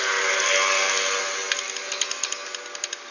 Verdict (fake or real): real